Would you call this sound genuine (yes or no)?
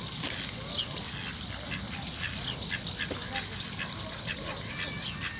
yes